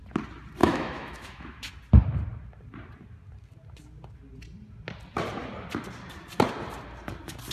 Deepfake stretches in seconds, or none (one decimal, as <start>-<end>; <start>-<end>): 0.6-1.7